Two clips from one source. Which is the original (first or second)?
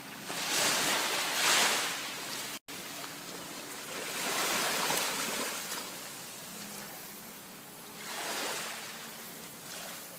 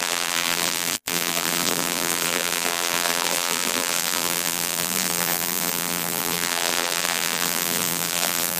first